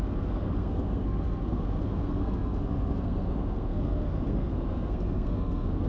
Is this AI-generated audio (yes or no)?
yes